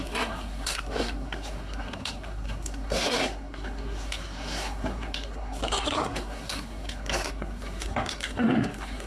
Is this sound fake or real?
fake